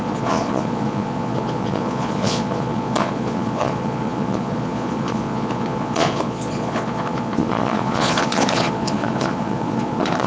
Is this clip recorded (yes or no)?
no